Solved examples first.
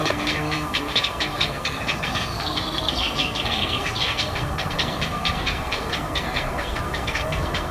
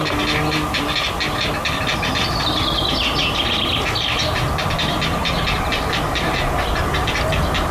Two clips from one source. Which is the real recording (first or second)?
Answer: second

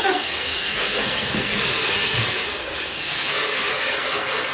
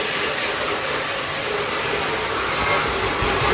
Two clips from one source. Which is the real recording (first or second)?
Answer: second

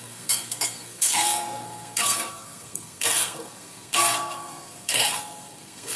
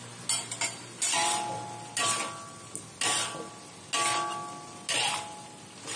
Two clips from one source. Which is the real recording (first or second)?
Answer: second